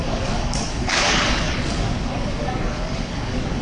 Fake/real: fake